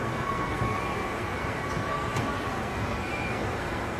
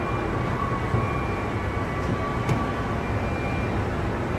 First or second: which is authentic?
second